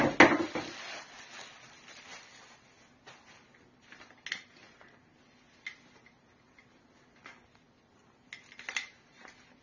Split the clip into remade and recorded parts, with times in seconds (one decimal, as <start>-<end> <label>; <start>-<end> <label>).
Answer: 0.0-9.6 recorded